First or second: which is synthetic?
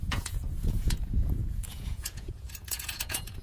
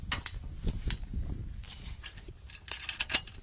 first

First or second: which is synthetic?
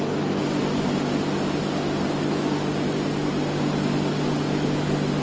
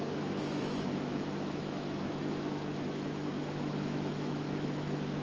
second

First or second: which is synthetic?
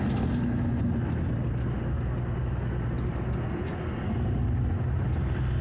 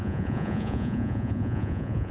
second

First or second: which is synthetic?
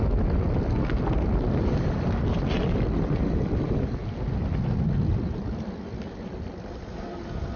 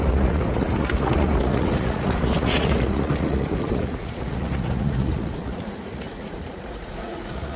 second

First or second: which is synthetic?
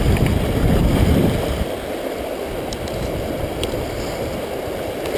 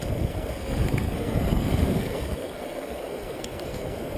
second